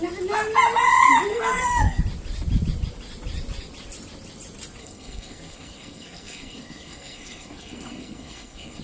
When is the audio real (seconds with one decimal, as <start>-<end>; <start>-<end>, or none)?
0.0-1.3; 2.0-4.8